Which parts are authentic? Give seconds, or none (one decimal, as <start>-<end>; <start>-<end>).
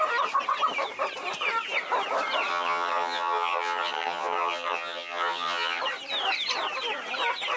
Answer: 0.0-2.5; 5.8-7.6